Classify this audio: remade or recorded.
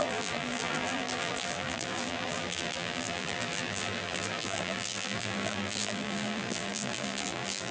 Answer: remade